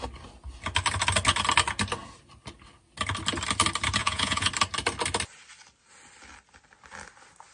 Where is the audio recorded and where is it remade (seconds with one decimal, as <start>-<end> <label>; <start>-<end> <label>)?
0.0-4.0 recorded; 4.0-4.5 remade; 4.5-7.5 recorded